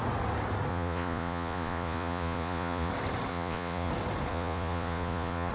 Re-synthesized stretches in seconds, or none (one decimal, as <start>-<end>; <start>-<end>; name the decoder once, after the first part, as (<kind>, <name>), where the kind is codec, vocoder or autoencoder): 0.7-2.9 (vocoder, Vocos); 3.3-3.9; 4.3-5.5